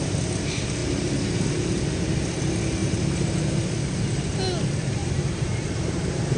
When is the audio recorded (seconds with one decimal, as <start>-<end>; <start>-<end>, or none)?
0.0-2.8; 3.6-5.0